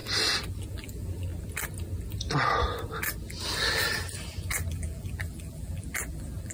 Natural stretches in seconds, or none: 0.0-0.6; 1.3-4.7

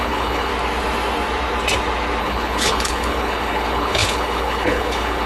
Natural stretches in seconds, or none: 0.5-2.2

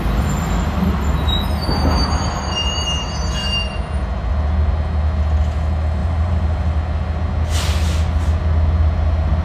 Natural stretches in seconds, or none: 0.0-6.0; 6.7-9.4

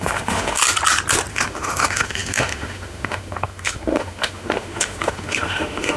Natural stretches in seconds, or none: 0.6-1.3

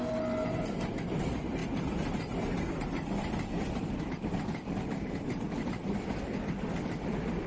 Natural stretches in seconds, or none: 0.0-7.5

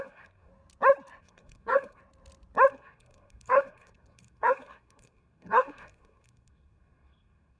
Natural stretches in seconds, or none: 0.5-1.2; 2.0-2.7